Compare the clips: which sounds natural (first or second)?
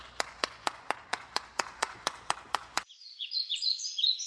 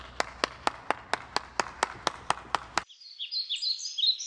second